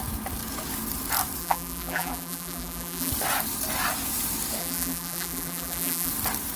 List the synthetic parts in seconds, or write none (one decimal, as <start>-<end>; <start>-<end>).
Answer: 1.4-3.1; 4.6-6.1